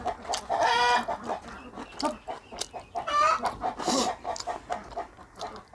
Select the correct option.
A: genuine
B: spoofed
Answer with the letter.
A